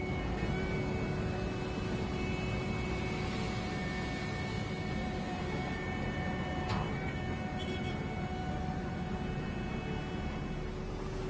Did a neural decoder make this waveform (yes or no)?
no